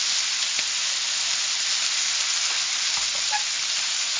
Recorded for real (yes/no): yes